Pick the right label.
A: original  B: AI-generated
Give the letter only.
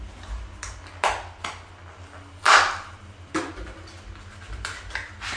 A